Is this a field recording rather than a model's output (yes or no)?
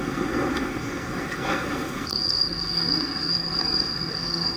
no